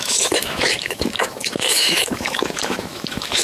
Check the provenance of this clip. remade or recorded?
remade